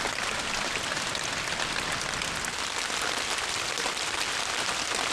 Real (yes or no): yes